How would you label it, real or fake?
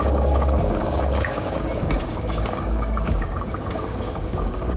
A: fake